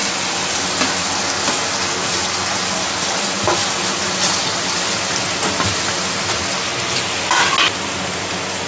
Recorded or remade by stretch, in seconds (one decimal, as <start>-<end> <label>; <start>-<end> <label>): 0.0-8.7 recorded